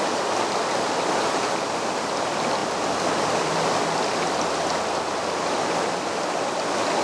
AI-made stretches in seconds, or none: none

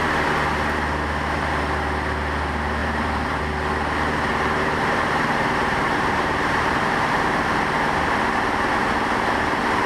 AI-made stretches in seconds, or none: 2.8-3.4 (vocoder, BigVGAN v2); 4.3-7.6

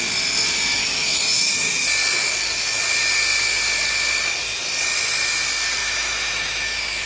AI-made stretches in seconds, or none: 0.8-1.6 (autoencoder, DAC-VAE); 5.8-7.1

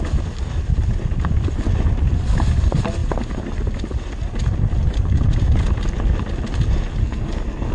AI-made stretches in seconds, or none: 7.0-7.7 (codec, SNAC)

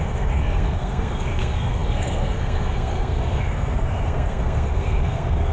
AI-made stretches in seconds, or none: 0.0-5.5 (codec, SNAC)

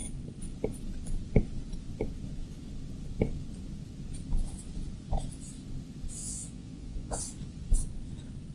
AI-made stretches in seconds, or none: 6.2-7.2 (vocoder, Vocos)

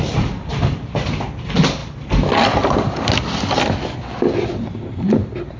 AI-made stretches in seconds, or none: 0.0-1.8 (vocoder, BigVGAN v2); 4.5-5.6